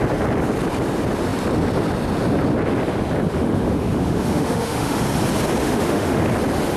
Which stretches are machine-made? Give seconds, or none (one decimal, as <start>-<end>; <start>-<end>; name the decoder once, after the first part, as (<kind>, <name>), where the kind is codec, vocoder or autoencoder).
3.3-5.0 (autoencoder, DAC-VAE); 5.6-6.2